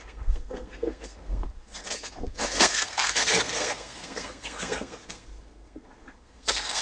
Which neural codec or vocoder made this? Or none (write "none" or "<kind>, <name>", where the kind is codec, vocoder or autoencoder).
codec, SNAC